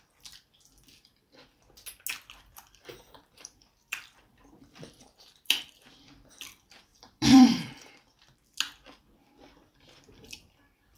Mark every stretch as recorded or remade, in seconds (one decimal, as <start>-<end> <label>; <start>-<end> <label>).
0.0-2.8 recorded; 2.8-5.7 remade; 5.7-6.9 recorded; 6.9-7.9 remade; 7.9-11.0 recorded